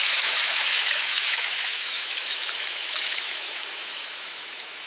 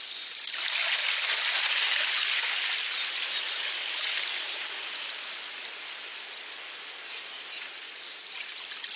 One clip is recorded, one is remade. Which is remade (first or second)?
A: first